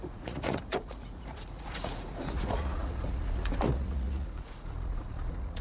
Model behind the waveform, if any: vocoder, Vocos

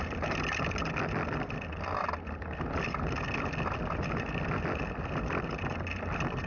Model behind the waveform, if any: none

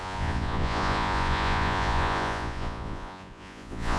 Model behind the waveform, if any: vocoder, Vocos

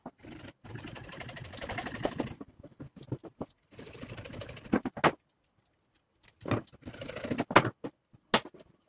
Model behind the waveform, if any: none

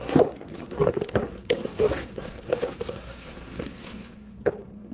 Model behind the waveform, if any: codec, SNAC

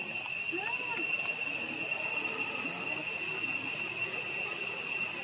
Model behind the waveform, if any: none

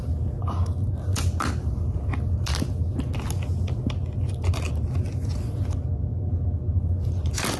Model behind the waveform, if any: none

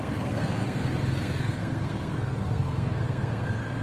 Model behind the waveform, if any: codec, SNAC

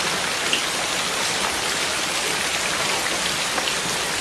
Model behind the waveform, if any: none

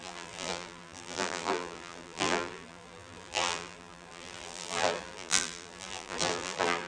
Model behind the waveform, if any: vocoder, BigVGAN v2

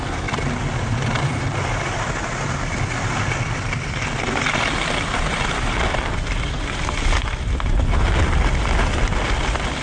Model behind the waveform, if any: none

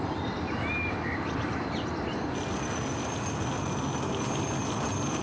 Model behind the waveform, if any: none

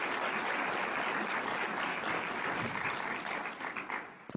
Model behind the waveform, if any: none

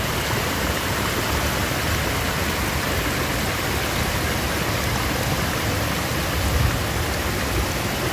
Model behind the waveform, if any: none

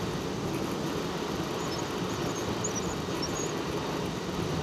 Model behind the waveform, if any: none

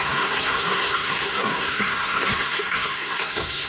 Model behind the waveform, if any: codec, SNAC